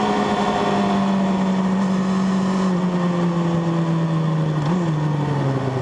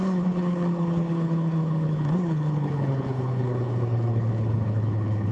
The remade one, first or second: second